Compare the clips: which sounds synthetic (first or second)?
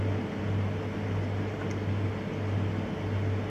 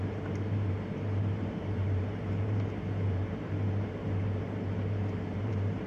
second